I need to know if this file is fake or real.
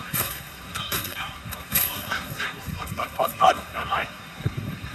fake